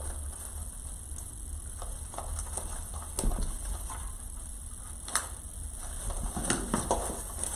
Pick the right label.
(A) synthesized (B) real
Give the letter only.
B